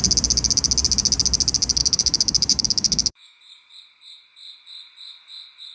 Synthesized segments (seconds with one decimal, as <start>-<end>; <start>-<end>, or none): 1.8-3.4